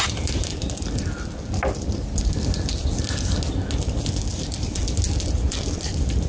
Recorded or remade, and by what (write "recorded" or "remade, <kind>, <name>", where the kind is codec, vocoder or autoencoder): recorded